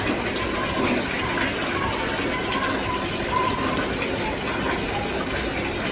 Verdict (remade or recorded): recorded